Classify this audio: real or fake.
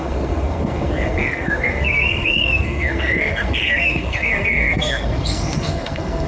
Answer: fake